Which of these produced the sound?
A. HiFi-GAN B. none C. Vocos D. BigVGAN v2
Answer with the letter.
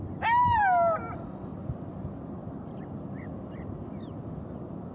B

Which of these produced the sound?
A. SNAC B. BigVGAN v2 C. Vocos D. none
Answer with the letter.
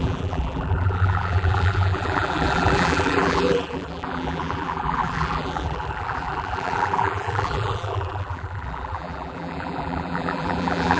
B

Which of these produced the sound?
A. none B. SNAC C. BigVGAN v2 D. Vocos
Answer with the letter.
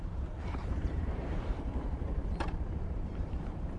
C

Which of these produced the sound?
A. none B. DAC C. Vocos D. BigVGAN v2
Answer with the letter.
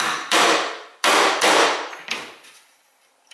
D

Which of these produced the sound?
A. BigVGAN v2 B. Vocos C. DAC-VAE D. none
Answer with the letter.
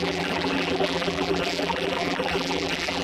A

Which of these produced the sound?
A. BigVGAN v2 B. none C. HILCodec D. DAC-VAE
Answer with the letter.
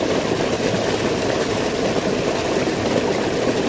B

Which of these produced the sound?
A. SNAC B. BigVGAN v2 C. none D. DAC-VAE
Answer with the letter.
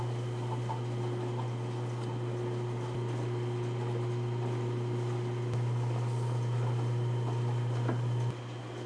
C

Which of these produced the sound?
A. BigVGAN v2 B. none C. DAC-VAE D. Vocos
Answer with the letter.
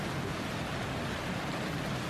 B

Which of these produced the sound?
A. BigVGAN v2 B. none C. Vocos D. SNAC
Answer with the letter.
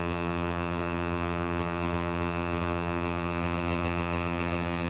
A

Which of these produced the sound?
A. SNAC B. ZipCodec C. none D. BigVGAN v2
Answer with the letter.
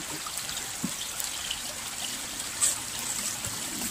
C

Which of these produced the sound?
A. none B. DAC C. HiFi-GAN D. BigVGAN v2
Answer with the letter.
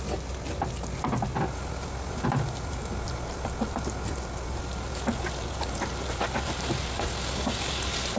A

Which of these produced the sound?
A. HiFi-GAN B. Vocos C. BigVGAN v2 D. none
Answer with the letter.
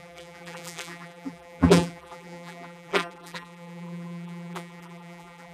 C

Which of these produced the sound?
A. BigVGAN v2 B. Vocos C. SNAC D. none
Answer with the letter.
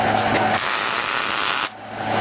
D